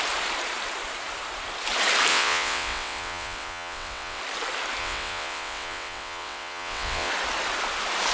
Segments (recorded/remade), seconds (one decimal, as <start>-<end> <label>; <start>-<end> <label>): 0.0-2.1 recorded; 2.1-4.2 remade; 4.2-4.8 recorded; 4.8-7.1 remade; 7.1-8.1 recorded